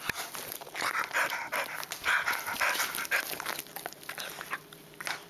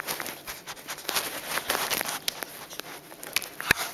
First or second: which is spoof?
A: second